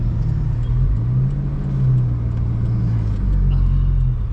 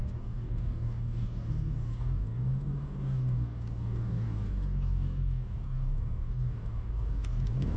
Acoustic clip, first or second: first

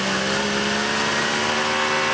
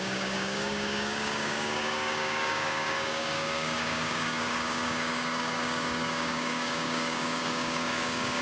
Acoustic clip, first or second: first